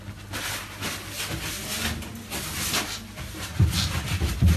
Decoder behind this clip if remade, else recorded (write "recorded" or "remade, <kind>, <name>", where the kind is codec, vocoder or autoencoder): recorded